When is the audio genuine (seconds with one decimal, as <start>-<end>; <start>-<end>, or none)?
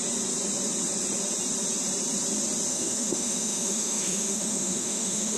0.0-2.7